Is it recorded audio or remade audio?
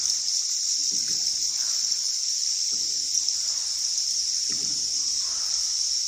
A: recorded